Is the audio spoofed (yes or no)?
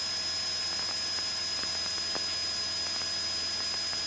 no